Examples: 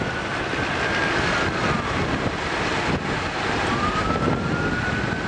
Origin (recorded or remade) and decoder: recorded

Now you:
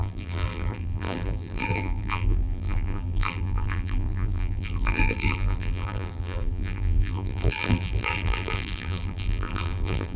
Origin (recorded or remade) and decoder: remade, vocoder, BigVGAN v2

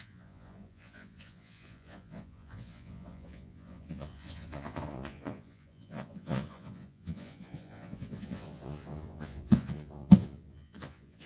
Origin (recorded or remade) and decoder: remade, vocoder, Vocos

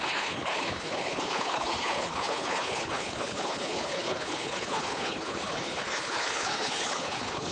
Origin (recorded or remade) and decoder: remade, codec, HILCodec